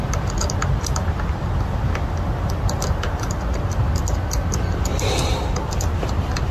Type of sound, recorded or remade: recorded